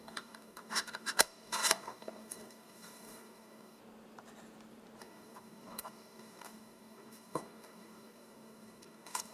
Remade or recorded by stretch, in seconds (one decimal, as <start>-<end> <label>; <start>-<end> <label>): 0.0-3.8 remade; 3.8-5.0 recorded; 5.0-9.3 remade